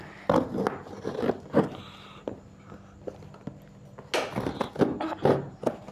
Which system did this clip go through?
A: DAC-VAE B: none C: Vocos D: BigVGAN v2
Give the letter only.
B